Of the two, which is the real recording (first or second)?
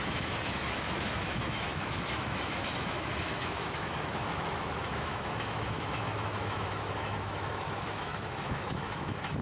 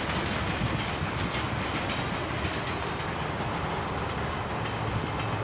second